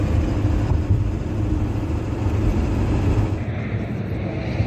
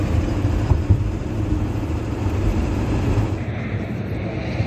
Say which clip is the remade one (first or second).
second